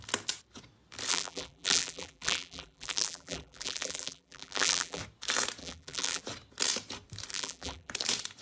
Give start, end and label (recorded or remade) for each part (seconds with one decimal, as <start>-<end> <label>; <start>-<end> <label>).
0.0-1.1 recorded; 1.1-5.0 remade; 5.0-5.6 recorded; 5.6-6.2 remade; 6.2-7.3 recorded; 7.3-7.9 remade; 7.9-8.4 recorded